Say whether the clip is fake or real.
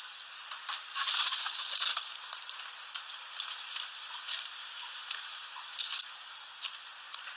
real